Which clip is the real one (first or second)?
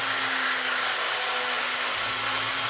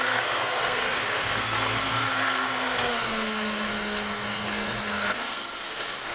first